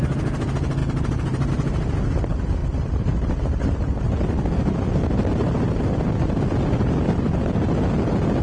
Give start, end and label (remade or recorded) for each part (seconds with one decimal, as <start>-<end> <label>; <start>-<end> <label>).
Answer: 0.0-0.8 recorded; 0.8-1.5 remade; 1.5-2.6 recorded; 2.6-4.1 remade; 4.1-8.4 recorded